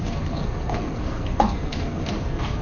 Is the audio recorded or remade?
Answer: remade